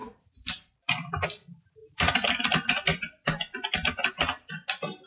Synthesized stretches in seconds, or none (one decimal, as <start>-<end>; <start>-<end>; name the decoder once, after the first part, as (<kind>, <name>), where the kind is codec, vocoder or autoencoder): 0.0-1.1 (vocoder, BigVGAN v2); 2.9-4.1